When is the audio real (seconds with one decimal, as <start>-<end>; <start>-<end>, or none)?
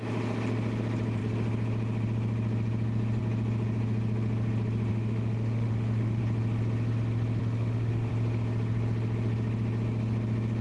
0.0-4.9; 6.2-7.4; 8.1-10.6